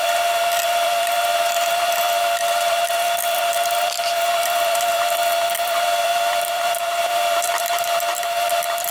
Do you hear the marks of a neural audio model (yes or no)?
yes